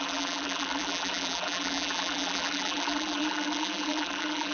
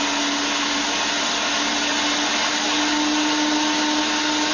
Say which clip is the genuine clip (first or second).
second